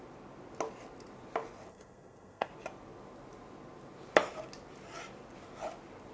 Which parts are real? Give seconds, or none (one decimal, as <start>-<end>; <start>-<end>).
0.0-1.7; 2.5-6.1